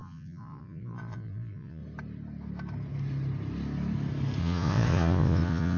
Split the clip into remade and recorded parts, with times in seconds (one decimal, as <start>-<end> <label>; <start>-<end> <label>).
0.0-1.8 remade; 1.8-4.4 recorded; 4.4-5.8 remade